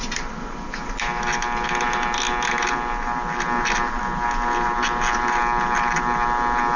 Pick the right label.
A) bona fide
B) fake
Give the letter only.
A